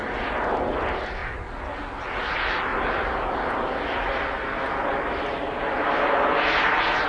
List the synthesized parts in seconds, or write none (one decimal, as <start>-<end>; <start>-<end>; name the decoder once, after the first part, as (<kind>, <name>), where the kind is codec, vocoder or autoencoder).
none

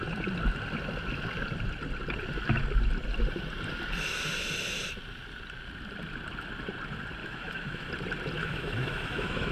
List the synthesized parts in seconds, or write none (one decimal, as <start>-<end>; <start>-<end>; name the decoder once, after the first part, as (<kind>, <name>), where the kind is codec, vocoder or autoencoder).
7.2-7.9 (autoencoder, DAC-VAE); 8.4-9.5

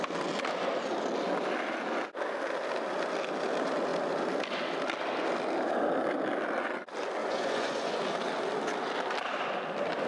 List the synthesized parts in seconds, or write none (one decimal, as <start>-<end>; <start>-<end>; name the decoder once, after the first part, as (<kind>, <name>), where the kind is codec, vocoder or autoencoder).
7.2-8.0 (vocoder, Vocos)